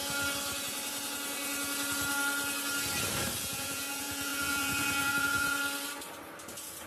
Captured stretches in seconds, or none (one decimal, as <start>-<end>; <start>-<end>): 0.0-3.4; 5.6-6.5